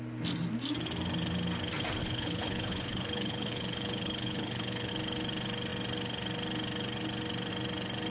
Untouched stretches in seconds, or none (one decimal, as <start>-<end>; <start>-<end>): 0.0-2.0; 4.9-8.1